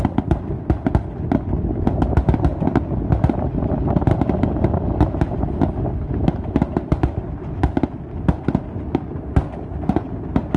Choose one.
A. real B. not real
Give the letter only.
A